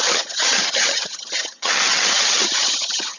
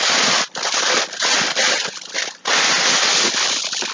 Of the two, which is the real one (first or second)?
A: second